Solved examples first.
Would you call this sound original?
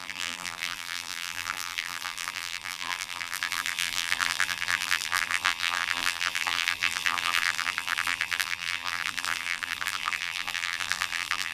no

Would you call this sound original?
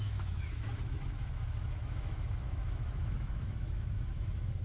no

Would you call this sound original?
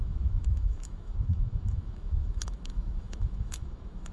no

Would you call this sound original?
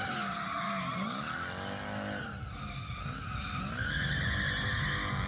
yes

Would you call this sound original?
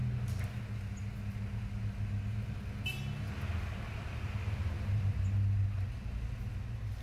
yes